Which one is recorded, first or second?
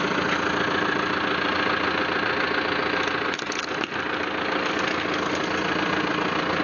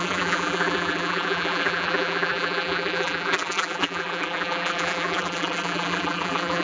first